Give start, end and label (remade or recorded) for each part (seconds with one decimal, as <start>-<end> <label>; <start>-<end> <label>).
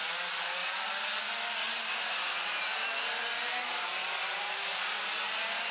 0.0-0.9 remade; 0.9-5.7 recorded